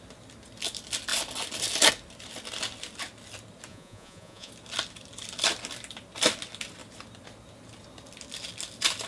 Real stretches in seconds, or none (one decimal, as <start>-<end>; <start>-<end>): 0.0-3.7; 4.5-9.1